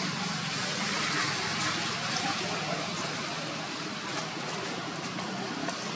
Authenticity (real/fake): real